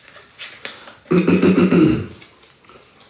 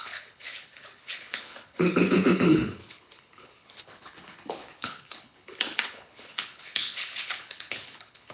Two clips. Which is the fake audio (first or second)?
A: second